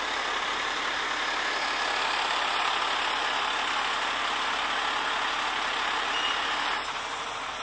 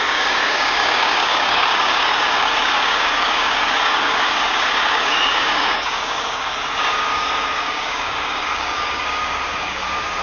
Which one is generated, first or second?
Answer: second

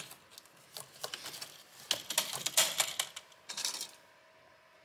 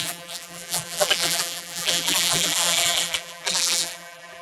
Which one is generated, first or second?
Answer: second